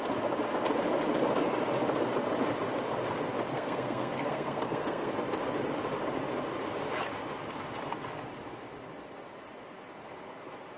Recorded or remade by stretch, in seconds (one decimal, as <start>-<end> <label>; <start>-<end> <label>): 0.0-3.5 recorded; 3.5-5.1 remade; 5.1-10.8 recorded